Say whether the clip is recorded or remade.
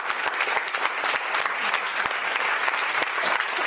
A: recorded